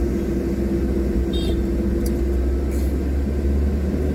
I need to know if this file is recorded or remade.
recorded